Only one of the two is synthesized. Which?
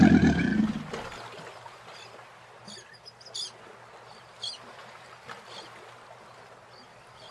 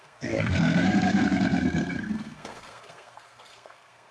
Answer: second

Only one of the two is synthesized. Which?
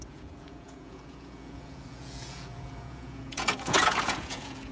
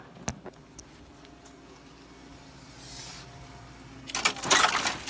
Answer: first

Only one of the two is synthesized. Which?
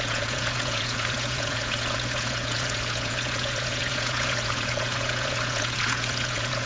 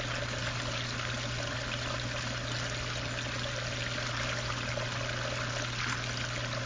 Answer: first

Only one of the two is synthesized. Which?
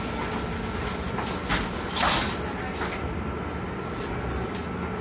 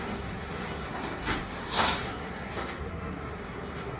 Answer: second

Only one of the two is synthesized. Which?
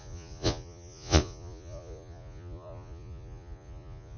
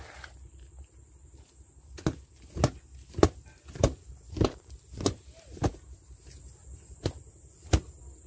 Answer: first